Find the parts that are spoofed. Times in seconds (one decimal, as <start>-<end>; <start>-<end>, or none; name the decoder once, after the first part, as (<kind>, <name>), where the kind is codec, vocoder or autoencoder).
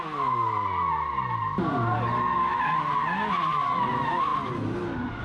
none